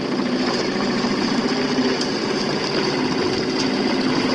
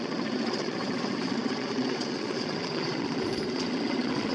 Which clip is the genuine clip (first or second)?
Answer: first